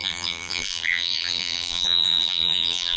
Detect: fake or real fake